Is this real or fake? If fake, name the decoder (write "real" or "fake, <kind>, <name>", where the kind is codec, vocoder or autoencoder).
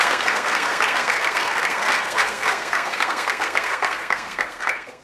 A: fake, codec, SNAC